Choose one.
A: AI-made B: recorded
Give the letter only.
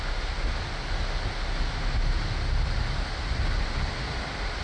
B